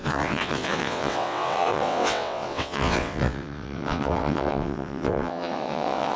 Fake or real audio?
fake